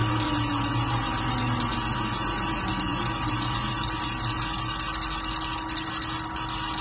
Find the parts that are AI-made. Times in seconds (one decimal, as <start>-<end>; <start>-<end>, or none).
none